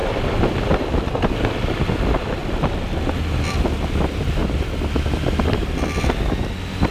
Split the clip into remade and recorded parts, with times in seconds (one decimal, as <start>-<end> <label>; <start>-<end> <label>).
0.0-0.7 remade; 0.7-2.4 recorded; 2.4-3.1 remade; 3.1-4.4 recorded; 4.4-6.0 remade; 6.0-6.9 recorded